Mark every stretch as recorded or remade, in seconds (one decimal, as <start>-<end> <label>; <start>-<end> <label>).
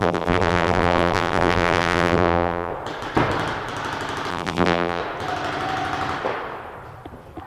0.0-2.7 remade; 2.7-4.3 recorded; 4.3-5.0 remade; 5.0-7.5 recorded